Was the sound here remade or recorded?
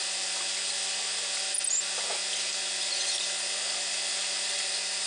recorded